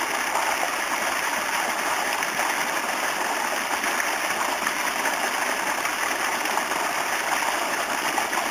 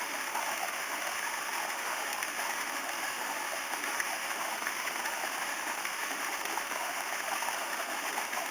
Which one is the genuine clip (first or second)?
first